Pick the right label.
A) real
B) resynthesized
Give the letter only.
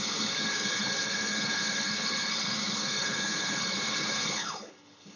B